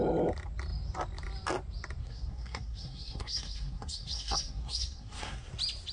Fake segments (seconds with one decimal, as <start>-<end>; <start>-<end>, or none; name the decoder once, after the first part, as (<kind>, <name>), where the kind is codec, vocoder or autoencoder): 2.0-5.5 (codec, SNAC)

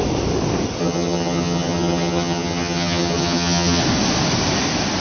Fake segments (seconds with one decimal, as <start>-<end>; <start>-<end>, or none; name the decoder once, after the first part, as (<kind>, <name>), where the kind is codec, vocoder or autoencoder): 0.8-3.8 (vocoder, HiFi-GAN)

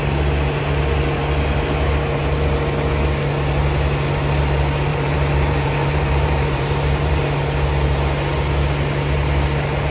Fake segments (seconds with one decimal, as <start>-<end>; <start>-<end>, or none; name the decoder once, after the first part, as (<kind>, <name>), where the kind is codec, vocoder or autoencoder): 4.9-7.2 (vocoder, BigVGAN v2)